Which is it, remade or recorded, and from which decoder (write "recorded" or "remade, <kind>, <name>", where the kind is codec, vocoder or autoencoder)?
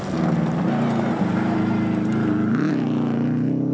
recorded